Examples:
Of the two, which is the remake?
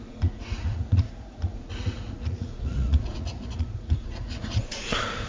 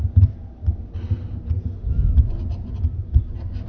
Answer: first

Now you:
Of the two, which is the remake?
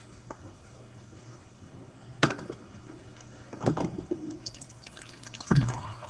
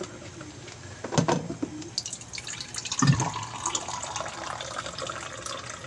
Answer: first